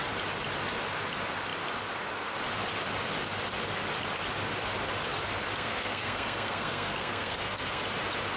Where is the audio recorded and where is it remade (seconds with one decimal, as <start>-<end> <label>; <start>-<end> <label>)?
0.0-5.5 recorded; 5.5-7.8 remade; 7.8-8.4 recorded